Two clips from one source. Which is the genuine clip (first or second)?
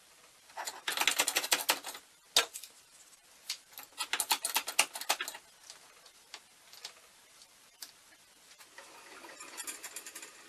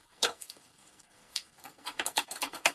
first